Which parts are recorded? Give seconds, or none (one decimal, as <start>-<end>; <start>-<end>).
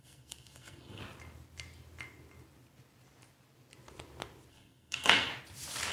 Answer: 1.0-4.5; 5.3-5.9